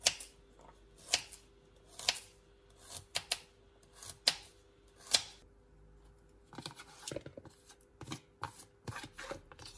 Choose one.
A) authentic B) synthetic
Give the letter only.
A